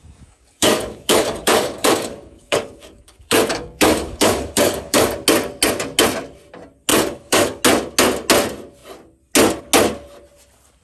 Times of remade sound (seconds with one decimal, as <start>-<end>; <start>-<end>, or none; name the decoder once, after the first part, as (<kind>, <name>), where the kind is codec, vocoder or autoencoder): 0.0-5.1 (codec, DAC); 6.9-7.6